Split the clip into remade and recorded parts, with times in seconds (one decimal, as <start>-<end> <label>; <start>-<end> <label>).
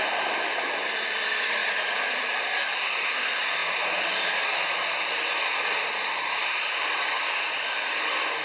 0.0-8.4 recorded